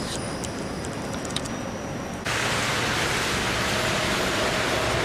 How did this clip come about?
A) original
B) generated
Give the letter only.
B